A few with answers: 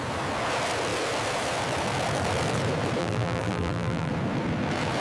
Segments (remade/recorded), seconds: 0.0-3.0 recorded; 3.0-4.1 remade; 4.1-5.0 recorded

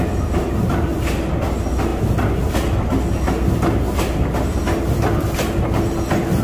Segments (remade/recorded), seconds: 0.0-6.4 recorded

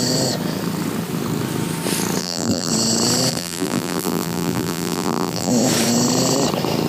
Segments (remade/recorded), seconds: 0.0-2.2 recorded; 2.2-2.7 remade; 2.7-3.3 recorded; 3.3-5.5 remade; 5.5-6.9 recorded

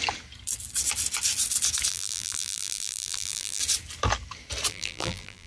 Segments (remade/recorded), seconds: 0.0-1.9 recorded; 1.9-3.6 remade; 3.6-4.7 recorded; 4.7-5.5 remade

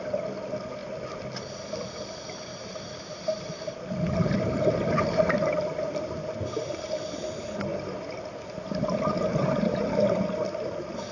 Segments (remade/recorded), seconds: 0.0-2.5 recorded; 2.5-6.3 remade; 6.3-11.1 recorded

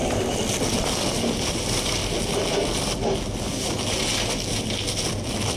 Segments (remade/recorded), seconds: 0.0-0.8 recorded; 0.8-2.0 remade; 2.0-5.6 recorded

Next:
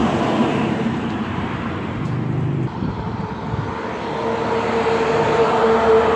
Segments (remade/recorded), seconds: 0.0-3.3 remade; 3.3-6.2 recorded